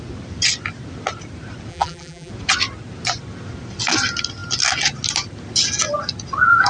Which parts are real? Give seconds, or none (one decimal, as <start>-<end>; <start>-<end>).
0.0-1.7; 2.3-6.7